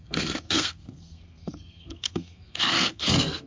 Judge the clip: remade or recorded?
remade